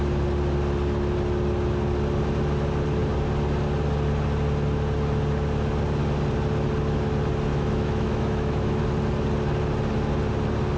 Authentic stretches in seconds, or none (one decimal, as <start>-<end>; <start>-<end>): 0.0-7.5; 8.8-10.8

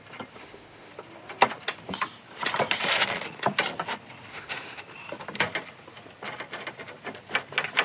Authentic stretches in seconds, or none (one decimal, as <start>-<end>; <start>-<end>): 0.0-0.4; 0.9-4.3; 4.8-7.8

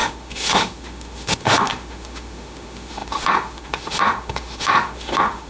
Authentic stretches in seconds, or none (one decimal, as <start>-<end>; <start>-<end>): none

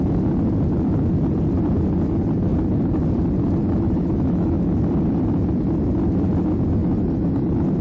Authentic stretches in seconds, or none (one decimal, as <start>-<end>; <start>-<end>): 0.0-3.6; 4.8-6.8

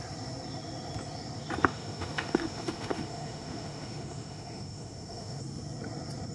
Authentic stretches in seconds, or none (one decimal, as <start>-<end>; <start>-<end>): 0.0-1.6; 5.4-6.3